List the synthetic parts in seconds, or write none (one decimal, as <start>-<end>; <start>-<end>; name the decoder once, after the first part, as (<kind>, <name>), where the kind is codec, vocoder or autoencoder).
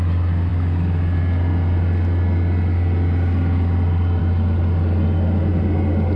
none